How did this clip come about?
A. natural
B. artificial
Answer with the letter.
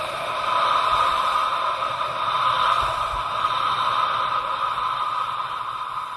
A